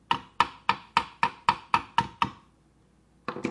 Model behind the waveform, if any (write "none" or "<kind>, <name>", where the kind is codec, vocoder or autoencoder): none